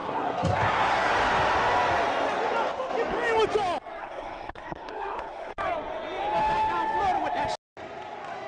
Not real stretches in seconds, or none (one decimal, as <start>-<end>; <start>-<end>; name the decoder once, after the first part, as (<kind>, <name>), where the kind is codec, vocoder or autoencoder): 0.0-1.1 (codec, SNAC); 4.0-5.5